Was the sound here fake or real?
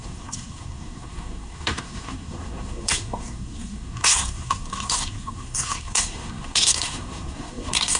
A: fake